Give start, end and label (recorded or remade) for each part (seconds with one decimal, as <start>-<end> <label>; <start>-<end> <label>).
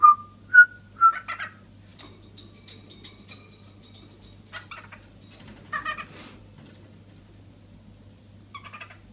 0.0-9.1 recorded